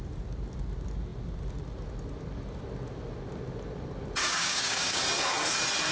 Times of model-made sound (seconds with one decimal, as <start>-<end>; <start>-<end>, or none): 4.2-5.0